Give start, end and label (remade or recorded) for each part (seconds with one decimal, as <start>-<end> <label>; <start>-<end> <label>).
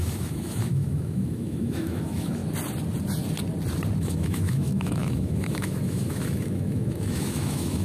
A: 0.0-2.4 remade; 2.4-4.0 recorded; 4.0-7.8 remade